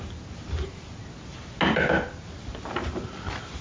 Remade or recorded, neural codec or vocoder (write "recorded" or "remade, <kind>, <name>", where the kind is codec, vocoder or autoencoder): recorded